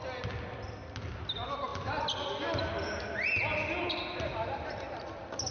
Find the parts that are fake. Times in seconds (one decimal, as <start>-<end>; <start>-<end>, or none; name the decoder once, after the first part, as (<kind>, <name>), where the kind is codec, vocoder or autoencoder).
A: none